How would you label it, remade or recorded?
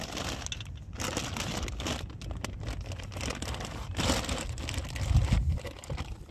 recorded